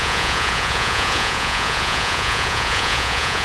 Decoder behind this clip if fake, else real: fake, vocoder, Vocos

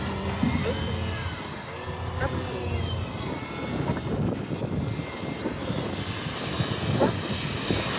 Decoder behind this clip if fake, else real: real